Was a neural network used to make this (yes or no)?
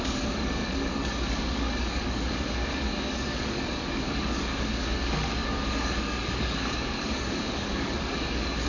yes